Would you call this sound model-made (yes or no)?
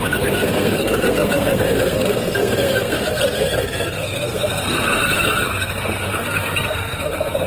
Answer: yes